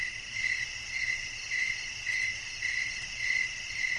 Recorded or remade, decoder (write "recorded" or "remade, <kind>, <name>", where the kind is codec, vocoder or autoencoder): recorded